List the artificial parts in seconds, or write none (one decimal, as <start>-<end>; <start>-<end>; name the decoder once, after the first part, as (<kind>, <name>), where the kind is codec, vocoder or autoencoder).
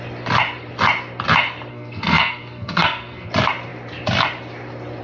1.7-3.3 (codec, SNAC)